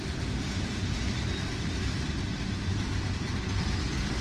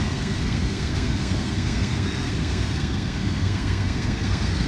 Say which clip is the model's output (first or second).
second